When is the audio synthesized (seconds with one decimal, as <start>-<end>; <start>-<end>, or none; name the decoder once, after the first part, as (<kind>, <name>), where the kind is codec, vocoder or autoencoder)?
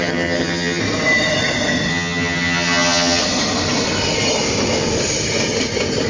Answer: 0.0-0.8 (vocoder, HiFi-GAN); 1.9-3.2